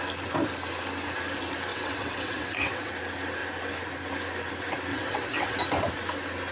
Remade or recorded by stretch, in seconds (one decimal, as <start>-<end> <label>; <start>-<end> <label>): 0.0-1.7 recorded; 1.7-2.9 remade; 2.9-4.9 recorded; 4.9-5.6 remade; 5.6-6.5 recorded